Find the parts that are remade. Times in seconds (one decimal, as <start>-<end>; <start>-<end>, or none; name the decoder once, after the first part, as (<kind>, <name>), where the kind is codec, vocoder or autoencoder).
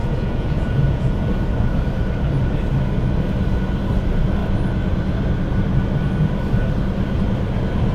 0.0-1.3 (vocoder, Vocos)